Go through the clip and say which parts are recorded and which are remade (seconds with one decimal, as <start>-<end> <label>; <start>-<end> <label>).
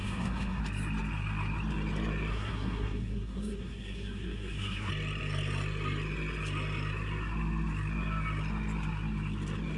0.0-0.6 remade; 0.6-2.3 recorded; 2.3-4.9 remade; 4.9-9.8 recorded